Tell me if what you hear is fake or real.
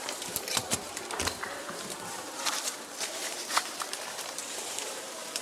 fake